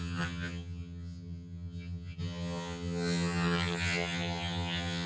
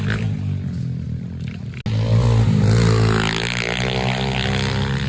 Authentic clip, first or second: second